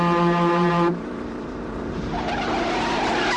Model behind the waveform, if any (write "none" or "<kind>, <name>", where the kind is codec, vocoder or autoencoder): vocoder, BigVGAN v2